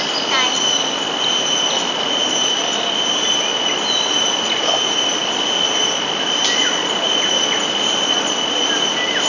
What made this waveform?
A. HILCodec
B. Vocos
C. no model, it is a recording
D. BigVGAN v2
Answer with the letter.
C